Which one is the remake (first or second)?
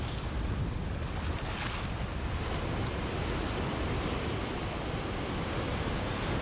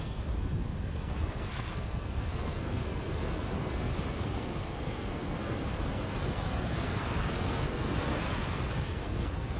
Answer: second